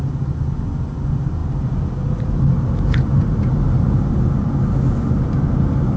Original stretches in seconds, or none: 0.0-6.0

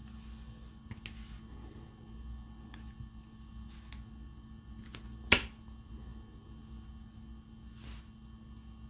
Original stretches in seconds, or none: 0.0-8.9